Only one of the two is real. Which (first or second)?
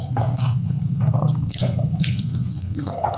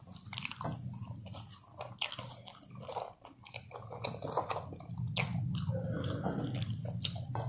second